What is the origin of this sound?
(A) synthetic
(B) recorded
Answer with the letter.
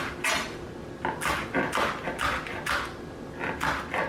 B